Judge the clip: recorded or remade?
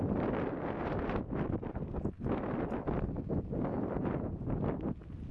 recorded